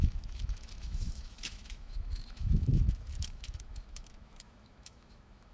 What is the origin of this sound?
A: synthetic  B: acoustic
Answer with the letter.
A